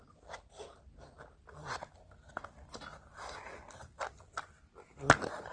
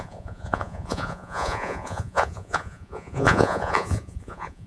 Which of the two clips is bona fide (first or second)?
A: first